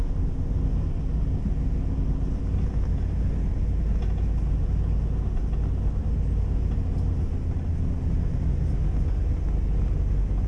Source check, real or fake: real